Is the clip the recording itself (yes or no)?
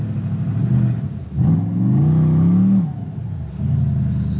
yes